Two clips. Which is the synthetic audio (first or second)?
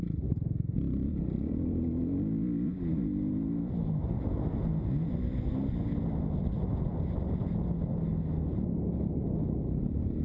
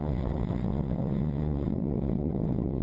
second